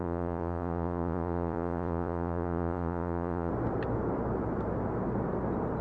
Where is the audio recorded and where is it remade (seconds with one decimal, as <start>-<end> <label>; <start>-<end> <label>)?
0.0-3.5 remade; 3.5-5.8 recorded